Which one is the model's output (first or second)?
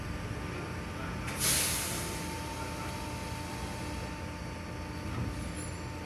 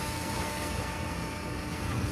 second